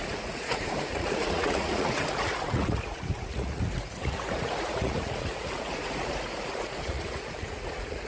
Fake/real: fake